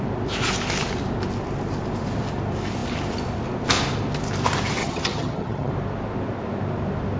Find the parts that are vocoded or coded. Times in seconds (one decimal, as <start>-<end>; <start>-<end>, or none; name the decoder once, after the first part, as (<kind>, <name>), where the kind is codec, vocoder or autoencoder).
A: 4.8-5.7 (vocoder, HiFi-GAN)